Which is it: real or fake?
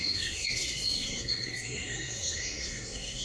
fake